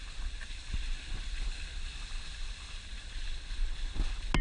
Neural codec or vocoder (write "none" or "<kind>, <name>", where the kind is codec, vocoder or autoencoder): none